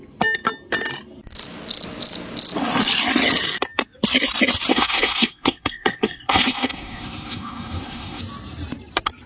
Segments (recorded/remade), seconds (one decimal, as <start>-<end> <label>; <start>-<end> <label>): 0.0-4.7 recorded; 4.7-8.2 remade; 8.2-9.3 recorded